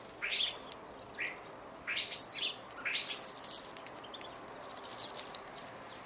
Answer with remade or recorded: recorded